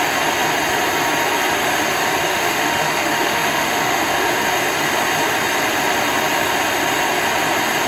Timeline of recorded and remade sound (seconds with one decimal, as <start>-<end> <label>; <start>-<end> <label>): 0.0-2.3 recorded; 2.3-4.3 remade; 4.3-7.9 recorded